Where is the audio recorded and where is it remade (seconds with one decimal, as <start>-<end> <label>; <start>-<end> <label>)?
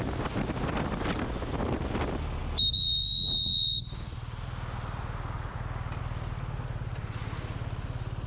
0.0-8.3 recorded